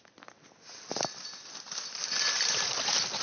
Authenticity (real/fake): real